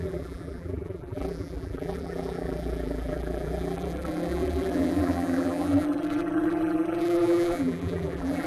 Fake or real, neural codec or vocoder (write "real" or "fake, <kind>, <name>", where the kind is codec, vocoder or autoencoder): fake, vocoder, BigVGAN v2